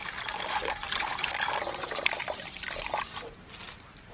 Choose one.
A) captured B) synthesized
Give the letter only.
A